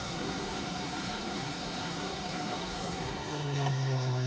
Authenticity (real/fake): fake